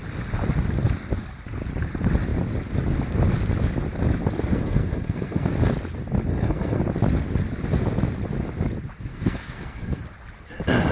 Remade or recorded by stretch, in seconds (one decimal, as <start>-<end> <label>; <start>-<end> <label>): 0.0-4.5 recorded; 4.5-5.5 remade; 5.5-6.3 recorded; 6.3-6.8 remade; 6.8-9.1 recorded; 9.1-10.0 remade; 10.0-10.9 recorded